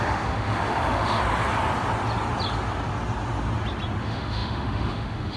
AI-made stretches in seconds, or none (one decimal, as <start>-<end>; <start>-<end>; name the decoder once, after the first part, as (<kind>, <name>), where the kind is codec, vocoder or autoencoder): 0.0-1.2 (autoencoder, DAC-VAE); 4.0-5.4

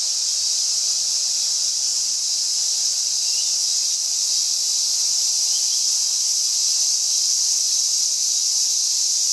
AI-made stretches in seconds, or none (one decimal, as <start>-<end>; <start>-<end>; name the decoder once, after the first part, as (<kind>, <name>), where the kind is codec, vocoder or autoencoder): none

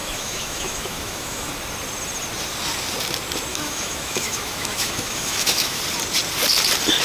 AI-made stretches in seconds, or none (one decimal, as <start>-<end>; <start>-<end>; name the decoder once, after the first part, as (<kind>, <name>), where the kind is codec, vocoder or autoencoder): 0.0-1.5 (autoencoder, DAC-VAE); 3.5-5.8

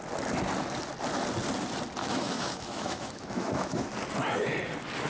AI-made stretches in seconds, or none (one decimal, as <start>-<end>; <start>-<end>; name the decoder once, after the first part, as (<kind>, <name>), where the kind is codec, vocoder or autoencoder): 2.0-3.9 (autoencoder, DAC-VAE)

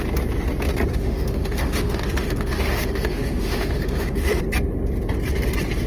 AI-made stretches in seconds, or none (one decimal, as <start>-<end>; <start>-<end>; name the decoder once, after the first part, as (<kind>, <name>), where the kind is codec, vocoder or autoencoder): 0.9-4.4 (autoencoder, DAC-VAE)

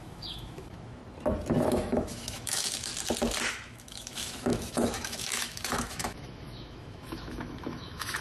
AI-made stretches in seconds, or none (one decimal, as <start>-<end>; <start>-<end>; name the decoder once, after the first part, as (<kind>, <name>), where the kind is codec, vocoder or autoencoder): 0.0-1.0 (autoencoder, DAC-VAE); 1.7-2.9; 3.5-8.2

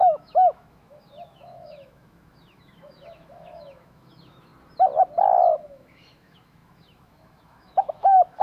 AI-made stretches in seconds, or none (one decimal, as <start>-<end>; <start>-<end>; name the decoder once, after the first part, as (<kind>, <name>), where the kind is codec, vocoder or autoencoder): 0.0-4.5 (autoencoder, DAC-VAE); 5.4-8.4

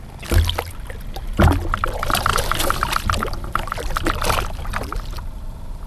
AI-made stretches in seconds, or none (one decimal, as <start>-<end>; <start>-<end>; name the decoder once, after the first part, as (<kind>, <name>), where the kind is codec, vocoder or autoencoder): none